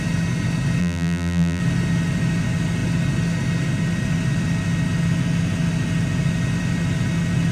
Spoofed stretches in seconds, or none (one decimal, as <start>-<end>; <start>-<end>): 0.8-1.6